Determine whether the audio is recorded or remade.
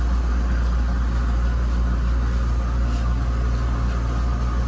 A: recorded